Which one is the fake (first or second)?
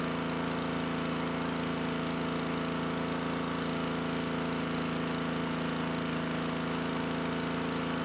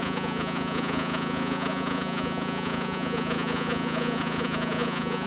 second